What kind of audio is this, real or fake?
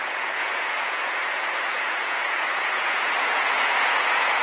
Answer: fake